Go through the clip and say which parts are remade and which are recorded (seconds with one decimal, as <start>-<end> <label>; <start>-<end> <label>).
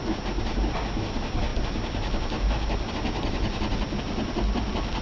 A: 0.0-5.0 recorded